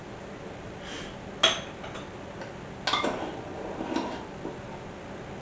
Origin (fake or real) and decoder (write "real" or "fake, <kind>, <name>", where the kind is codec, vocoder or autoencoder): real